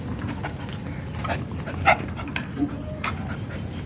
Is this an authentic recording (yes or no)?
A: yes